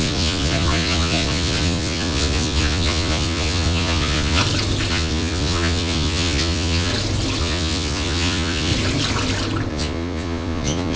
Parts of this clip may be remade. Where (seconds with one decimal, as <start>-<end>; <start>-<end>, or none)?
0.0-4.4; 4.9-6.9; 7.4-8.7; 9.7-11.0